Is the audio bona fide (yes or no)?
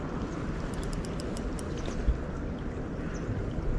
yes